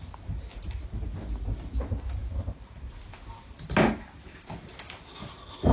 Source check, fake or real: real